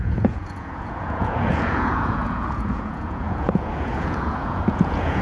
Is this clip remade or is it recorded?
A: remade